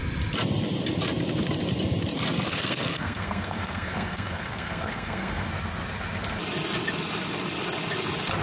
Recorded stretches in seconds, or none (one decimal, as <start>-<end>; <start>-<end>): 0.0-2.5; 5.5-8.4